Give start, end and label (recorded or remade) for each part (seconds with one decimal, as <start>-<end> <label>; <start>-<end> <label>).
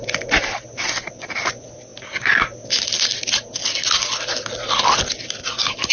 0.0-5.9 recorded